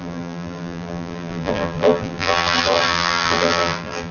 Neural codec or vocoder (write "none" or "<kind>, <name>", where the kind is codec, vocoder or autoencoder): vocoder, BigVGAN v2